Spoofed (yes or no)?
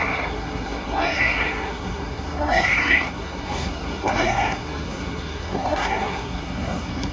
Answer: yes